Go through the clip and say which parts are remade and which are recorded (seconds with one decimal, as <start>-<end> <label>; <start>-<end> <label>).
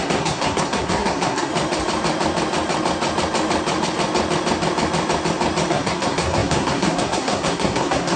0.0-1.5 remade; 1.5-5.7 recorded; 5.7-8.2 remade